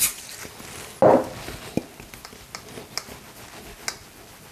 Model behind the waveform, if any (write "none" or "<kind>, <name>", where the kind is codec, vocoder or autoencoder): none